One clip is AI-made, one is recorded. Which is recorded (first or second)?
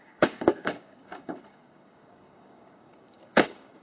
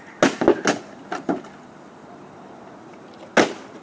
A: second